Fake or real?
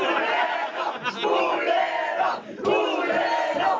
real